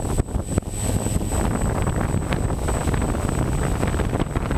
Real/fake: real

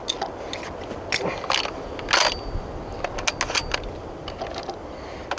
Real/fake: real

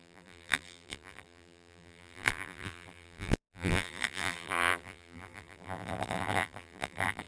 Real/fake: fake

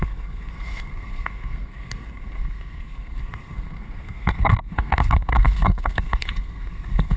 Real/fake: fake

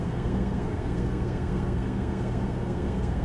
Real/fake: fake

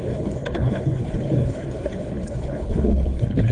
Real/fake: fake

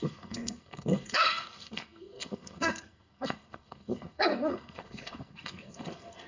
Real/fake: fake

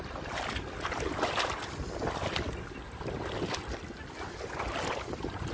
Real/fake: real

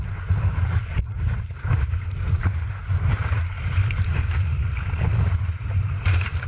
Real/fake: fake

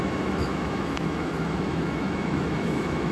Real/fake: fake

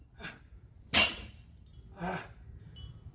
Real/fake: real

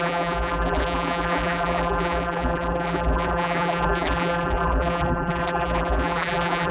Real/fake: fake